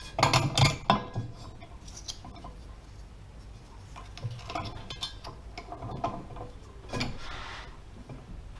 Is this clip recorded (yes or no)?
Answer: yes